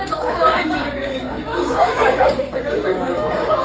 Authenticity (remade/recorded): remade